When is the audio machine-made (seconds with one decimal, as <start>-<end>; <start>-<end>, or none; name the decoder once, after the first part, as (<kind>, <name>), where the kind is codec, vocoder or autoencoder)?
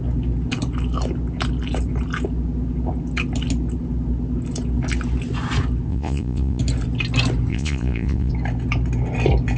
5.9-6.6 (vocoder, Vocos); 7.5-8.3